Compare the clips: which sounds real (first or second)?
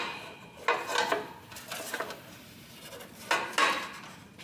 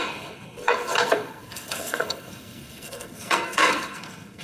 first